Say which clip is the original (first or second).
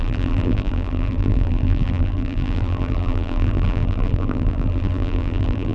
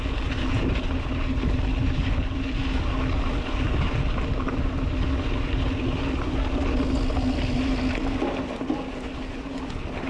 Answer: second